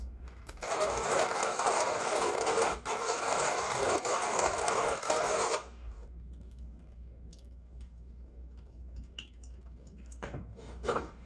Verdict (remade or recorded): remade